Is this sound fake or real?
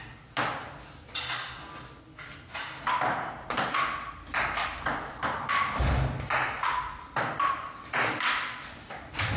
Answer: real